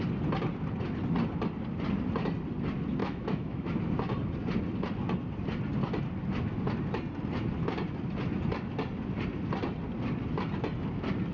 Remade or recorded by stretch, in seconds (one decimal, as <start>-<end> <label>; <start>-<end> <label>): 0.0-3.0 recorded; 3.0-3.7 remade; 3.7-11.3 recorded